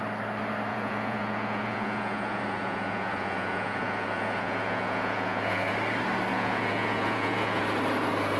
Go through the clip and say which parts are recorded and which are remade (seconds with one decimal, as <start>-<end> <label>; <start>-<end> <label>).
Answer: 0.0-0.7 recorded; 0.7-5.7 remade; 5.7-6.3 recorded; 6.3-7.6 remade; 7.6-8.4 recorded